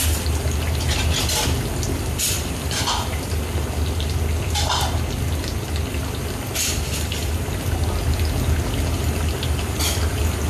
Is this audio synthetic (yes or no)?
no